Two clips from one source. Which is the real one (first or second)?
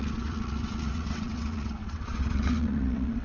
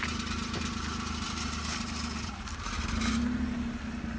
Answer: second